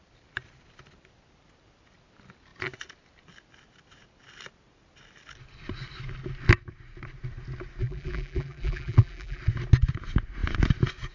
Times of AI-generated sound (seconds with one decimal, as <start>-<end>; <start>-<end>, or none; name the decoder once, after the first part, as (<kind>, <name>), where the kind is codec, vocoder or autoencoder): 7.8-9.4 (vocoder, BigVGAN v2)